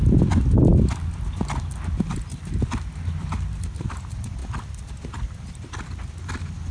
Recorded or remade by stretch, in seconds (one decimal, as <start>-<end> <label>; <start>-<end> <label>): 0.0-6.7 recorded

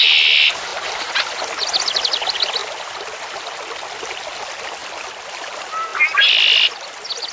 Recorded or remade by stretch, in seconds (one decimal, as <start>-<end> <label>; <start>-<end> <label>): 0.0-7.3 recorded

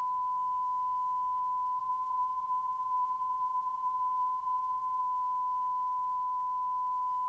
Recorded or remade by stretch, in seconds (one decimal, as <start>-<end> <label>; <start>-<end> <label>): 0.0-1.8 recorded; 1.8-5.0 remade; 5.0-7.3 recorded

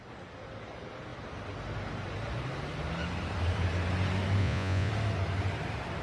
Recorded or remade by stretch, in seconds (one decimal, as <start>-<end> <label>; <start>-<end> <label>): 0.0-4.4 recorded; 4.4-4.9 remade; 4.9-6.0 recorded

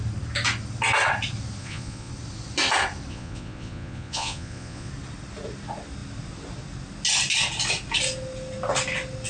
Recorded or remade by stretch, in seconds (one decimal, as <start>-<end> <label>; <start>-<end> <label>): 0.0-1.6 recorded; 1.6-2.1 remade; 2.1-3.1 recorded; 3.1-4.9 remade; 4.9-9.3 recorded